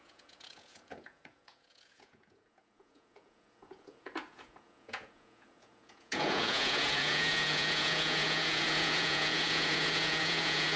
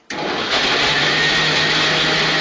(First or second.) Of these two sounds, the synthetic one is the first